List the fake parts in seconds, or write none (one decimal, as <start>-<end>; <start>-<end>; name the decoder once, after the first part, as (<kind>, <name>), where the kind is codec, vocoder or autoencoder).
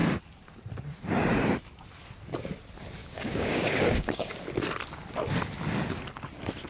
3.0-4.4 (codec, DAC)